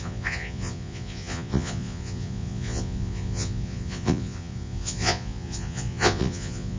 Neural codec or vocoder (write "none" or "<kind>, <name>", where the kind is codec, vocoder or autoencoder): vocoder, Vocos